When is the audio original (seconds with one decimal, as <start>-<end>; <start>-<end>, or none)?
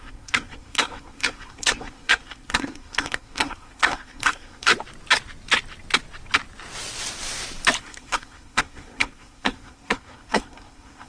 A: 4.7-7.8